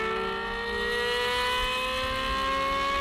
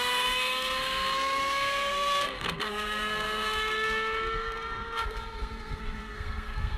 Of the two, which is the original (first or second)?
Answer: first